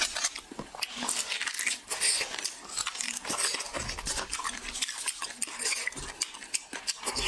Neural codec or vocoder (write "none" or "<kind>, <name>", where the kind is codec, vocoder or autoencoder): none